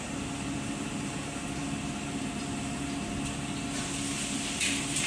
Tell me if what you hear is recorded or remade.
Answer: recorded